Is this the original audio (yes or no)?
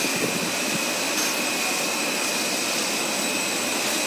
yes